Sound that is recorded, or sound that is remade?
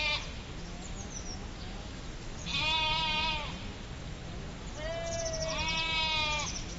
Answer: recorded